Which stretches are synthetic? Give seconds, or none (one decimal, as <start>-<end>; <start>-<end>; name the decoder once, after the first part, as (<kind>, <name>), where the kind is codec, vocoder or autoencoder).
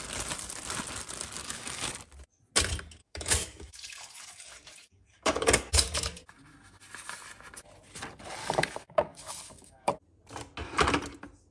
1.4-1.9 (codec, DAC); 3.0-6.2; 8.4-9.9